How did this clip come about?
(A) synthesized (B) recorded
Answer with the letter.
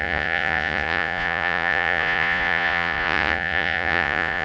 A